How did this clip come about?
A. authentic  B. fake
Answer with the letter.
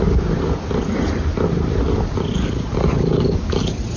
A